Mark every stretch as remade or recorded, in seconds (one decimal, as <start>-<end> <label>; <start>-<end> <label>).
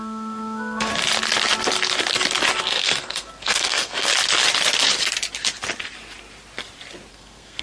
0.0-0.9 remade; 0.9-2.6 recorded; 2.6-4.1 remade; 4.1-7.1 recorded; 7.1-7.6 remade